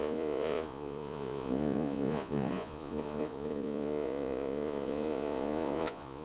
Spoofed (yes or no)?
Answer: yes